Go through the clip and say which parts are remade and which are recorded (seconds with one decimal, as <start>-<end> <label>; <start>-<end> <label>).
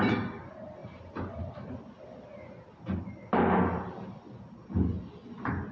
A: 0.0-0.8 recorded; 0.8-1.4 remade; 1.4-5.7 recorded